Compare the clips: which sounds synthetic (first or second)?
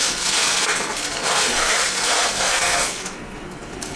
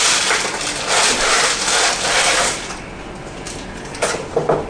first